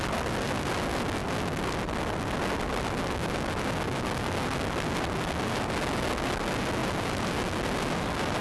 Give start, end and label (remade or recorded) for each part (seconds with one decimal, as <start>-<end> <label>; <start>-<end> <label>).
0.0-8.4 recorded